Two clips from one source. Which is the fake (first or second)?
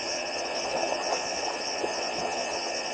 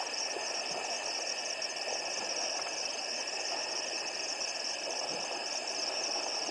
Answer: first